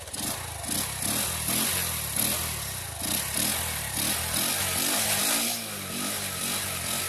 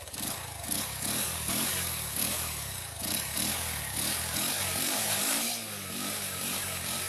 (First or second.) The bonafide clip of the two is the first